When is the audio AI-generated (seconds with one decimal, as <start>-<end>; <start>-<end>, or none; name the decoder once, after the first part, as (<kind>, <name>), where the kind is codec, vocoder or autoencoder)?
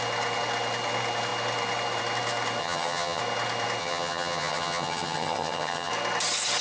2.6-3.2 (vocoder, HiFi-GAN); 3.8-5.9